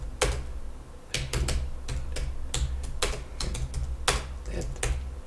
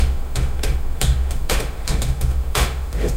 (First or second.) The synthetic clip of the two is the second